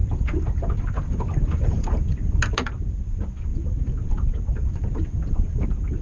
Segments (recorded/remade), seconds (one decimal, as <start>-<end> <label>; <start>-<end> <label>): 0.0-6.0 recorded